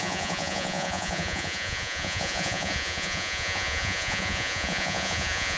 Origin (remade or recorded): remade